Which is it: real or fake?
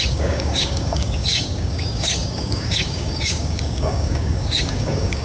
fake